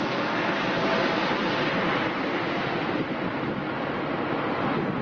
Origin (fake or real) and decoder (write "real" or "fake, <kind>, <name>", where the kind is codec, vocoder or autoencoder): real